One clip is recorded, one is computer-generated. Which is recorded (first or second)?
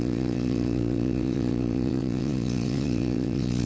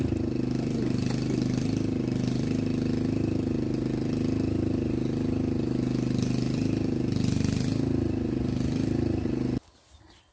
second